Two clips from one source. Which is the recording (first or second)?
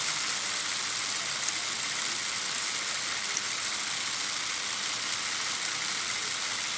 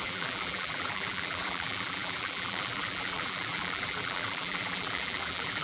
first